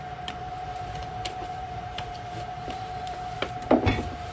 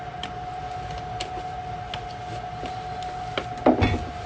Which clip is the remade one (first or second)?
first